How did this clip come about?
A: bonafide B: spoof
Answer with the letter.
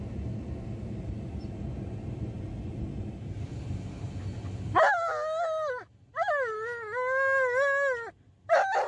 A